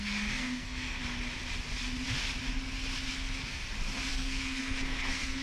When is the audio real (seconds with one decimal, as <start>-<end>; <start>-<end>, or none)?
1.0-3.1; 3.6-4.1